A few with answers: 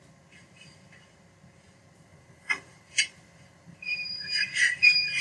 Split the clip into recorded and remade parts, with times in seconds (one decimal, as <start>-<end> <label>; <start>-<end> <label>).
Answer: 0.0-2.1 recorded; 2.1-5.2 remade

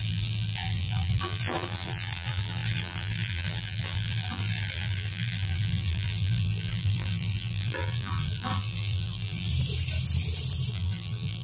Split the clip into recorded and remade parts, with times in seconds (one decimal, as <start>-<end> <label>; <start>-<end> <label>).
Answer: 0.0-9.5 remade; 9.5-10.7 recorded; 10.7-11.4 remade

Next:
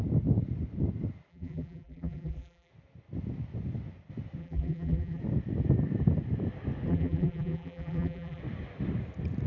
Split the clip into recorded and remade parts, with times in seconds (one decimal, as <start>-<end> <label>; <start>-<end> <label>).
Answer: 0.0-1.3 recorded; 1.3-2.7 remade; 2.7-4.4 recorded; 4.4-5.2 remade; 5.2-6.9 recorded; 6.9-8.4 remade; 8.4-9.5 recorded

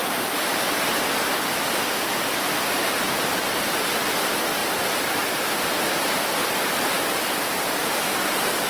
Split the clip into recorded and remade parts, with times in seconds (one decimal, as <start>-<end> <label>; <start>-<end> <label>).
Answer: 0.0-4.6 remade; 4.6-7.0 recorded; 7.0-8.7 remade

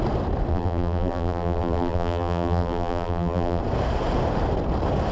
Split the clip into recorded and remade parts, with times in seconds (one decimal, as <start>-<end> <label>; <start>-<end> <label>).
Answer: 0.0-0.5 recorded; 0.5-3.6 remade; 3.6-5.1 recorded

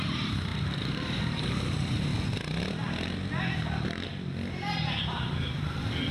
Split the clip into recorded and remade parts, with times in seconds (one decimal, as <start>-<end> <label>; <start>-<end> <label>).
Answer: 0.0-2.1 remade; 2.1-6.1 recorded